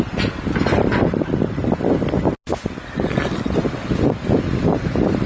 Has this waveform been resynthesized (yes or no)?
no